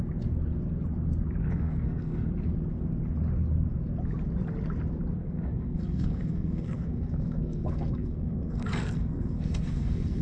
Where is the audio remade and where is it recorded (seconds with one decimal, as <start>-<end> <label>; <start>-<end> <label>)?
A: 0.0-1.4 recorded; 1.4-2.3 remade; 2.3-5.2 recorded; 5.2-10.2 remade